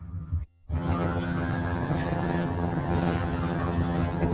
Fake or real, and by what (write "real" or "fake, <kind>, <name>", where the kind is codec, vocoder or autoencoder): fake, vocoder, HiFi-GAN